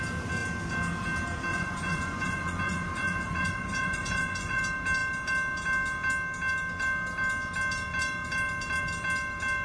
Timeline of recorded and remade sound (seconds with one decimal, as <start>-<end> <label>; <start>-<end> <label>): 0.0-1.5 recorded; 1.5-4.6 remade; 4.6-9.6 recorded